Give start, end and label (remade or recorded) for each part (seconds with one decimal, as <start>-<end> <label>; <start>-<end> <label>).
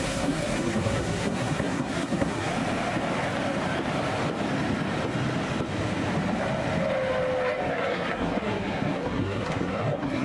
0.0-2.5 remade; 2.5-7.7 recorded; 7.7-10.2 remade